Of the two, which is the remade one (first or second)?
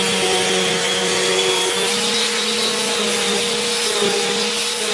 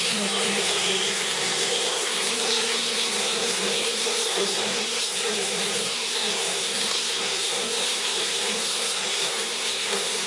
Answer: second